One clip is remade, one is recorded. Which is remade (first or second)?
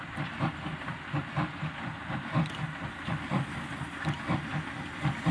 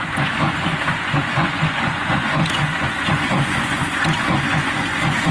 second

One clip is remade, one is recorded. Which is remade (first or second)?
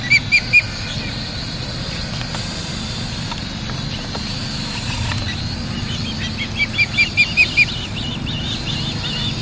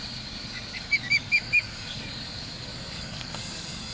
second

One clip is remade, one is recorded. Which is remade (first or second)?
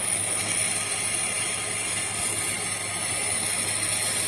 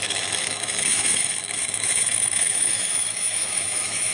second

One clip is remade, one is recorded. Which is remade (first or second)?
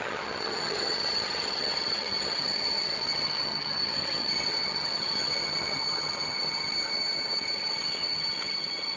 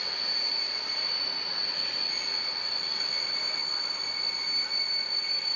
first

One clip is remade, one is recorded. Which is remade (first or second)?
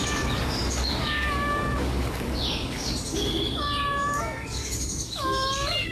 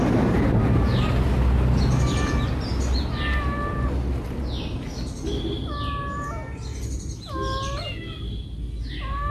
first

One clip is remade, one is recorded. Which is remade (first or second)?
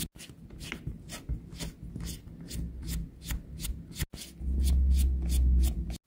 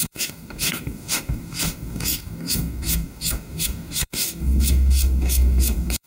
second